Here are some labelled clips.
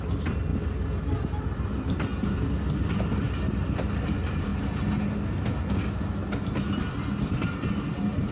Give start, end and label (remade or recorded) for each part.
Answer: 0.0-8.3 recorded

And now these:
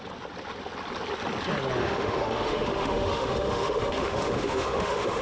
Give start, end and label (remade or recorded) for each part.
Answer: 0.0-1.8 recorded; 1.8-5.2 remade

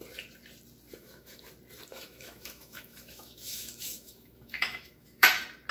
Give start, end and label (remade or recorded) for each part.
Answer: 0.0-0.9 recorded; 0.9-1.5 remade; 1.5-1.9 recorded; 1.9-5.3 remade; 5.3-5.7 recorded

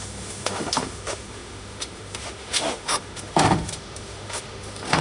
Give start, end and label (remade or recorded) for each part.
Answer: 0.0-5.0 remade